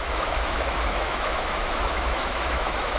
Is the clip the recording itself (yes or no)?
no